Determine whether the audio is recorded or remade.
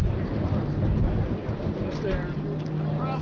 recorded